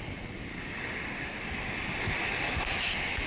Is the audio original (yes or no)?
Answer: yes